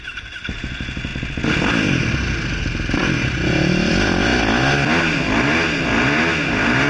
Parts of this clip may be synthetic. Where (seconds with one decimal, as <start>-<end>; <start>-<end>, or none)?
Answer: none